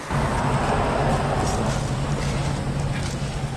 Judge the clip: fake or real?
real